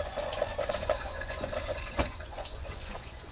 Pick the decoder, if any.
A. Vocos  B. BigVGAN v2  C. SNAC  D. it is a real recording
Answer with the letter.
A